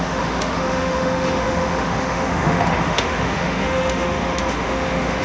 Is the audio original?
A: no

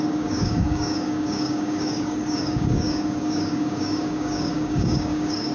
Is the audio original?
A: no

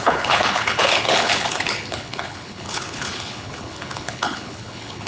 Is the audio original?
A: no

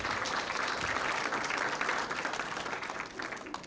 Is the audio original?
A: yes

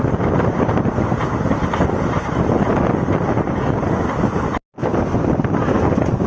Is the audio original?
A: yes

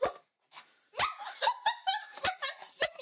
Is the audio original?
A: no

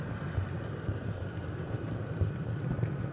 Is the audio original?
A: yes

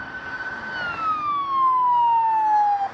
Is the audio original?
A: yes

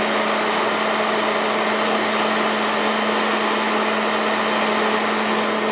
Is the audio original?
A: yes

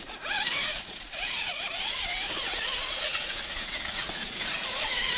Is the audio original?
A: no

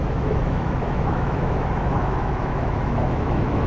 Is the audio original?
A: no